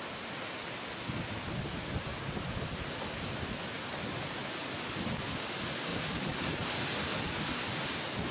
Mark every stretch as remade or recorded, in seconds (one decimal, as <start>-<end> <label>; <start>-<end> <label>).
0.0-5.9 recorded; 5.9-7.1 remade; 7.1-8.3 recorded